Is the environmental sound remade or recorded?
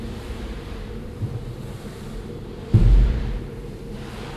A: remade